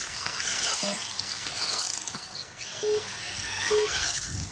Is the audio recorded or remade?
remade